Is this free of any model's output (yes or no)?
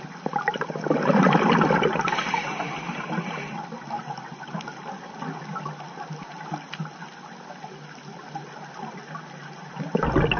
yes